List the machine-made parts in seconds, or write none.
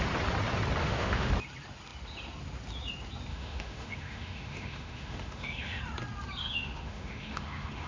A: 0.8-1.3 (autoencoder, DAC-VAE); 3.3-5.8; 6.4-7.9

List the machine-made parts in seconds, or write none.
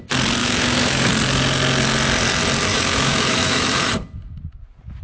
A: 0.4-1.1 (autoencoder, DAC-VAE); 2.7-3.9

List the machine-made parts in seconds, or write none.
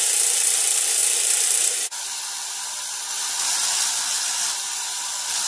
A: none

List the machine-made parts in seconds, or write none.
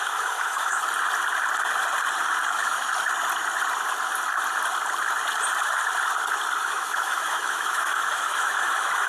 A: 0.0-0.8 (autoencoder, DAC-VAE); 2.5-2.9; 6.6-9.1